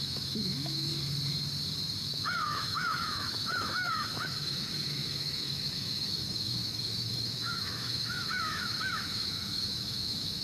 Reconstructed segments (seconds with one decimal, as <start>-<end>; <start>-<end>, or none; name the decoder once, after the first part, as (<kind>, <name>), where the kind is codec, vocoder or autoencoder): 0.0-0.9 (autoencoder, DAC-VAE); 2.0-10.4